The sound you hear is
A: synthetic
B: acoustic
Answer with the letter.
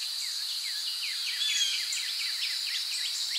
B